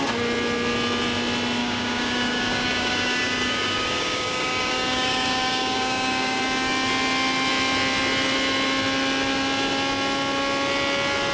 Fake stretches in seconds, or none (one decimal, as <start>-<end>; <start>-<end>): 1.6-6.4